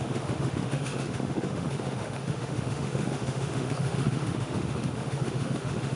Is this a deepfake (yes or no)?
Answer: yes